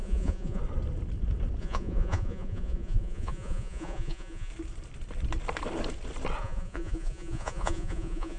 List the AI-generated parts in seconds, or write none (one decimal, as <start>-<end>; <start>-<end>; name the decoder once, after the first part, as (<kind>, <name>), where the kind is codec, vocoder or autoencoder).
0.0-0.6 (vocoder, Vocos); 1.6-4.5; 6.4-8.4